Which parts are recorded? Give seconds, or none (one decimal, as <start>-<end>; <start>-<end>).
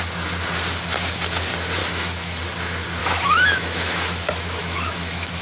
0.0-1.8; 2.4-3.0